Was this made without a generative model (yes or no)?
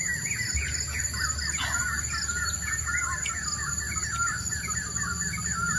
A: yes